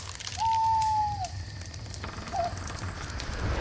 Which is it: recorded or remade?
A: recorded